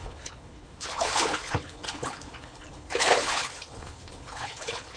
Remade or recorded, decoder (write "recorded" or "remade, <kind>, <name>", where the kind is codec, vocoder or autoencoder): remade, codec, HILCodec